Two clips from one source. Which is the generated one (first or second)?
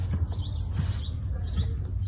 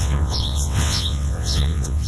second